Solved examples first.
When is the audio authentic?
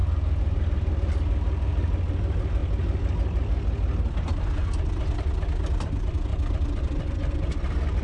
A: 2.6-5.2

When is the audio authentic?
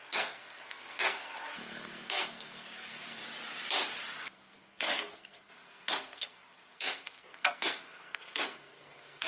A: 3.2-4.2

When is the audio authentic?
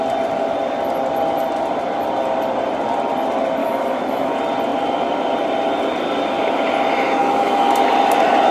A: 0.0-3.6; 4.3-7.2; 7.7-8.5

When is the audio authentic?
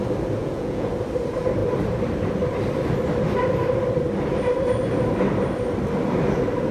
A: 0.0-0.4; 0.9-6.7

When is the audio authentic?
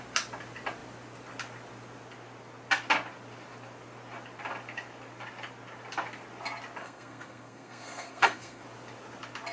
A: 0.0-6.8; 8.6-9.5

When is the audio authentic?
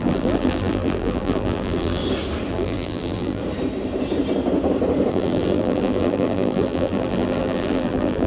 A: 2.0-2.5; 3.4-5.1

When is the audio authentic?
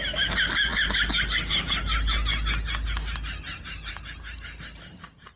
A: 0.0-5.4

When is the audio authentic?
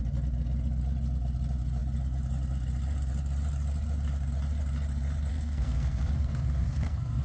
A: 0.0-5.3